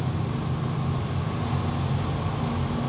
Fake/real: real